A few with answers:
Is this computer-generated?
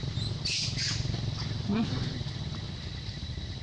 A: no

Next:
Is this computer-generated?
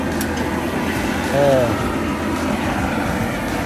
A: no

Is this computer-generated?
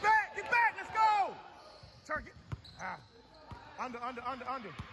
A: no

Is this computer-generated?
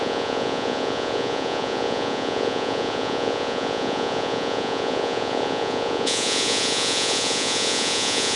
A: yes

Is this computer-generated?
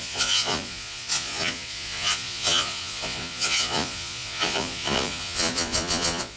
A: yes